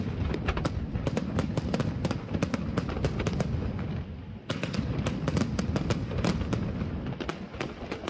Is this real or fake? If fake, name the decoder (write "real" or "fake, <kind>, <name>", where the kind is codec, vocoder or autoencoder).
real